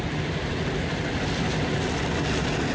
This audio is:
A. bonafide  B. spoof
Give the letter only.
A